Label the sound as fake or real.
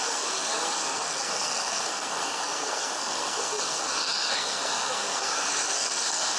fake